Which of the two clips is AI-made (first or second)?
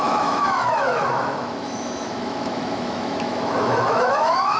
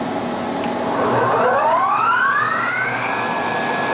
first